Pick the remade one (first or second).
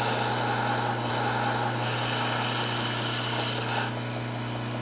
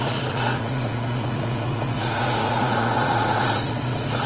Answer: second